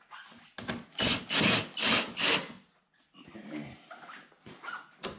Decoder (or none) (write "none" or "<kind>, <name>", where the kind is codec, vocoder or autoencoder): none